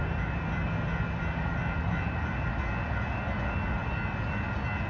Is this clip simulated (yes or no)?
no